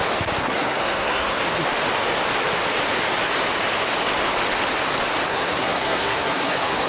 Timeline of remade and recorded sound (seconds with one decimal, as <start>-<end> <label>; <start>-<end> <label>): 0.0-0.4 recorded; 0.4-1.4 remade; 1.4-5.3 recorded; 5.3-6.9 remade